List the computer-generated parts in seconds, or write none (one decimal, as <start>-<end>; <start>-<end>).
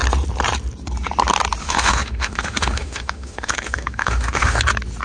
1.6-4.6